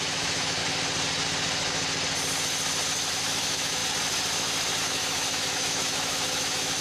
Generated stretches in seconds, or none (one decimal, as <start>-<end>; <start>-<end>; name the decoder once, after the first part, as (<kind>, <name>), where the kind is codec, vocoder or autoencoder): 0.0-0.6 (autoencoder, DAC-VAE); 3.1-3.8; 4.8-6.8